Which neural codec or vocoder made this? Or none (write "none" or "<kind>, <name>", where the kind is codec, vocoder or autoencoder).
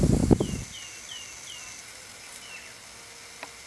none